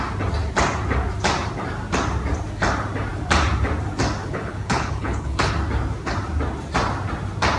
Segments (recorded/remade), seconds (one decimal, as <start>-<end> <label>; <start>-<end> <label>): 0.0-4.2 recorded; 4.2-5.5 remade; 5.5-7.6 recorded